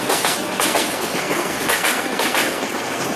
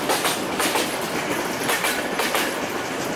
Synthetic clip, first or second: first